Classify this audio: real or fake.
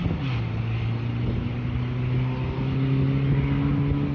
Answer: real